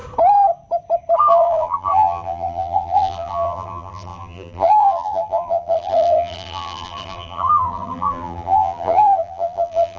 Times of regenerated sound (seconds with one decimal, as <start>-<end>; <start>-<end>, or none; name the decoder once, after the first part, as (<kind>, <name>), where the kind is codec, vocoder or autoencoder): 1.2-10.0 (vocoder, BigVGAN v2)